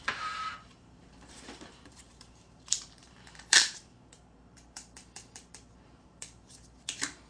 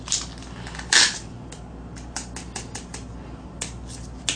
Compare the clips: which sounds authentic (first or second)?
second